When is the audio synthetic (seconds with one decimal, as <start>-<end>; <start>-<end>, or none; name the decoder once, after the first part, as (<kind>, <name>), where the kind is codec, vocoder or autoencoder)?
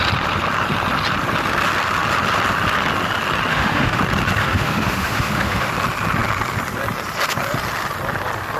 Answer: 3.5-4.0 (autoencoder, DAC-VAE); 4.4-5.7